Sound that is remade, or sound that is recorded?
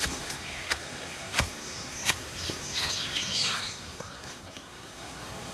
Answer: remade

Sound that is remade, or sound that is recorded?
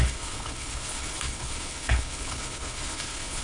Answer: remade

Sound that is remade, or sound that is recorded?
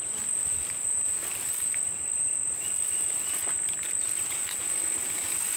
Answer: recorded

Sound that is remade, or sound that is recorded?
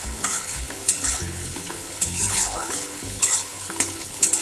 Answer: remade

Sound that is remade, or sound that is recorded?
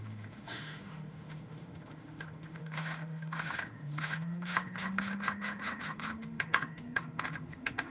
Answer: remade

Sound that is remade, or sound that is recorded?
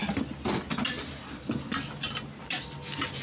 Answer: recorded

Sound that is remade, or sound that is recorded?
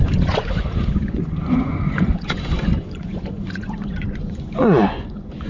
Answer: remade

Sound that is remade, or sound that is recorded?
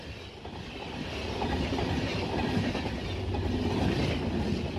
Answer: recorded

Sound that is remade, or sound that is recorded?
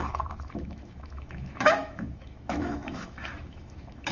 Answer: remade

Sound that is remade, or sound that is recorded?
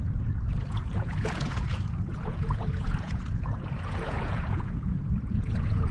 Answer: remade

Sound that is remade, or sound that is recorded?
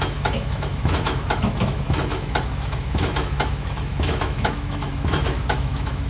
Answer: remade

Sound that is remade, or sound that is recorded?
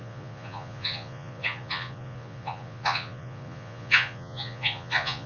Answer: remade